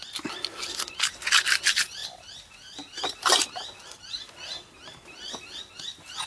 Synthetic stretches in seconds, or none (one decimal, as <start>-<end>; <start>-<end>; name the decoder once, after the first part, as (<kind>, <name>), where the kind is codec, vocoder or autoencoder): none